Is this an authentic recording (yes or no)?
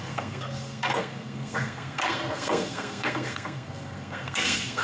no